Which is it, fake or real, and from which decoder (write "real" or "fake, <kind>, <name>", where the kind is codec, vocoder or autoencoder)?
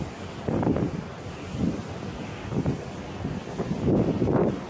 real